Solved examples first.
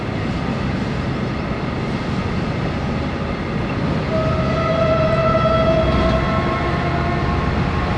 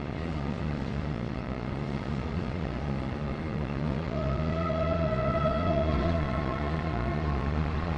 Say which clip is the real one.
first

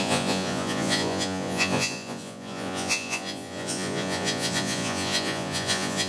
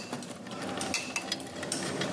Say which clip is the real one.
second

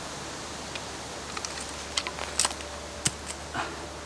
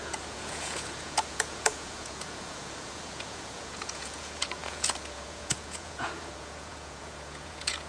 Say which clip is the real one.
first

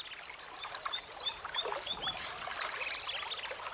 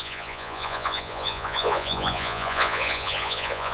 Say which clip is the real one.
first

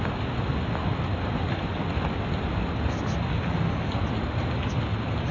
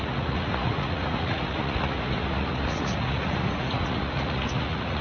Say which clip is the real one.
first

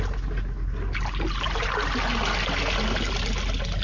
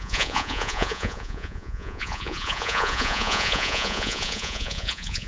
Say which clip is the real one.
first